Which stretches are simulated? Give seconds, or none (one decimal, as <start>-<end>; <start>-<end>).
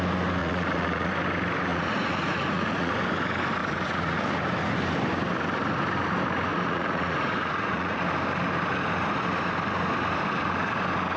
0.4-1.1; 1.7-2.9; 3.6-4.4; 6.5-8.0